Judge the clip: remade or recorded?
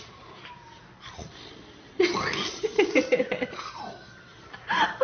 recorded